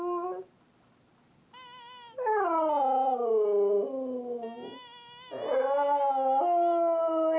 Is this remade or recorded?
recorded